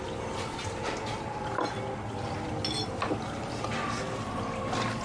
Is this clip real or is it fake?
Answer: real